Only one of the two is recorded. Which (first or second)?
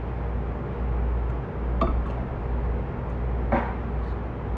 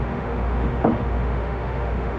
first